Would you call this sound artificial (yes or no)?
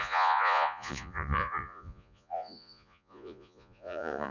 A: yes